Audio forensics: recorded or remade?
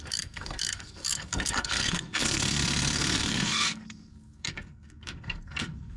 remade